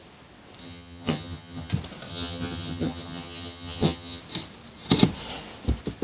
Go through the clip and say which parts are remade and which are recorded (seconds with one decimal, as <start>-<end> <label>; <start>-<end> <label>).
0.0-0.6 recorded; 0.6-1.7 remade; 1.7-2.1 recorded; 2.1-4.2 remade; 4.2-6.0 recorded